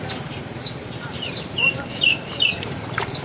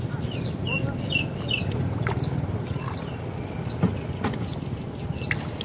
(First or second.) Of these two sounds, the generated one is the first